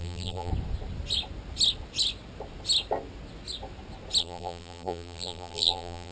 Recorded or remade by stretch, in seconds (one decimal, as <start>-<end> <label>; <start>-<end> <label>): 0.0-0.5 remade; 0.5-4.2 recorded; 4.2-6.1 remade